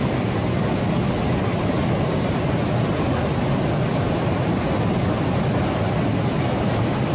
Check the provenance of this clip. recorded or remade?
recorded